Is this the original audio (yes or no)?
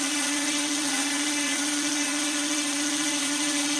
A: no